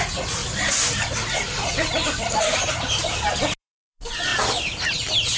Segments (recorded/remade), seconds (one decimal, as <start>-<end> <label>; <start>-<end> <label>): 0.0-0.4 remade; 0.4-3.6 recorded; 3.6-4.3 remade; 4.3-5.4 recorded